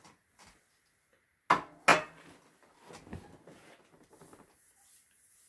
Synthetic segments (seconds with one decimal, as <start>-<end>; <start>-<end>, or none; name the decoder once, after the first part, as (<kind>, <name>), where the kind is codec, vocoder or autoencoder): none